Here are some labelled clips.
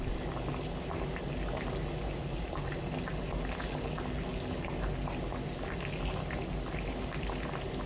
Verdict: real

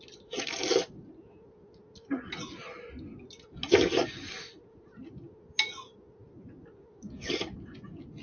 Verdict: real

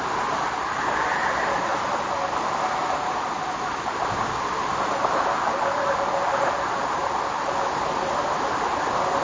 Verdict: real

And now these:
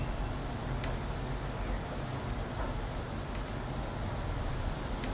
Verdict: real